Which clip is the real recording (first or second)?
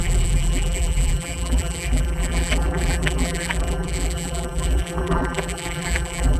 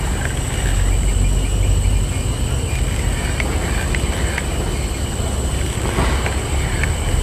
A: second